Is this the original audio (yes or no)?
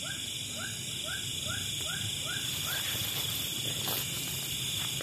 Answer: no